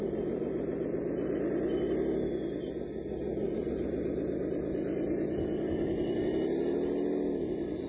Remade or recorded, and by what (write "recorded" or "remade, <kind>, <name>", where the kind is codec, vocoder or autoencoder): recorded